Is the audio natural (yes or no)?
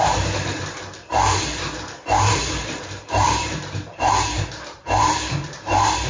no